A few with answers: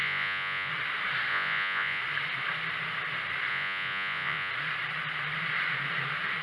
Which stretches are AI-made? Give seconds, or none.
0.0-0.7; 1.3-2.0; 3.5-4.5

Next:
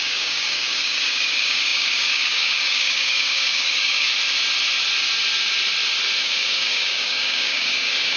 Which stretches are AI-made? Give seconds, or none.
0.0-4.1; 6.2-8.2

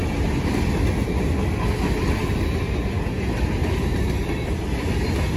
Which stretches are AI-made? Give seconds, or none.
3.6-4.9

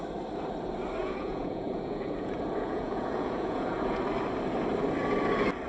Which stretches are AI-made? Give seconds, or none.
1.0-4.0

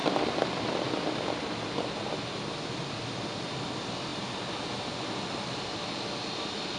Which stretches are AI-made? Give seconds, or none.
none